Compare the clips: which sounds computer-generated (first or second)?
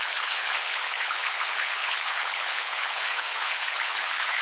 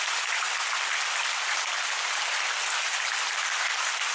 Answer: first